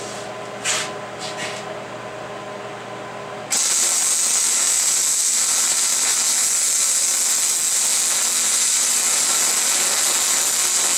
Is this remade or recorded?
recorded